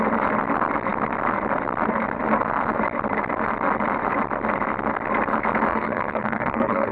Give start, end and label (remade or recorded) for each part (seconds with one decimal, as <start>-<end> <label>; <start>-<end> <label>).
0.0-5.7 recorded; 5.7-6.9 remade